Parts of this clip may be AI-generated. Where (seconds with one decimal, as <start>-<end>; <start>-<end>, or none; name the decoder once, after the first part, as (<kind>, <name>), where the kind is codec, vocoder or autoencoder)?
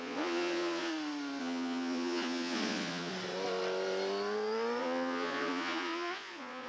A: 0.0-0.9 (vocoder, Vocos); 1.4-3.1; 4.8-6.7